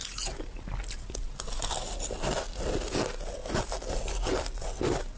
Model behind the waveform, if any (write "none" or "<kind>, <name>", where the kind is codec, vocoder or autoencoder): none